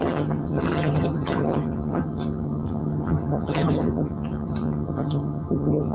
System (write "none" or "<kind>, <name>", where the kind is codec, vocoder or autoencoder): vocoder, HiFi-GAN